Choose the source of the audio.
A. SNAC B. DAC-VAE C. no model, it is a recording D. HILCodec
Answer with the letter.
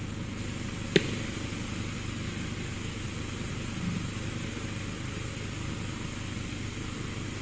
C